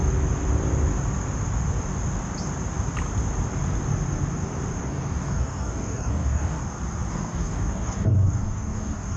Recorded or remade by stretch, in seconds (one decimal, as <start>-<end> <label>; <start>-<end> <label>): 0.0-4.8 recorded; 4.8-6.6 remade; 6.6-7.1 recorded; 7.1-9.2 remade